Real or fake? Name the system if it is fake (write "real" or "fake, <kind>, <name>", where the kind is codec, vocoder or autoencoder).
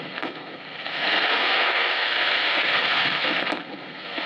fake, codec, SNAC